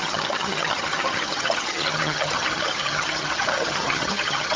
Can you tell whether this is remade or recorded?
remade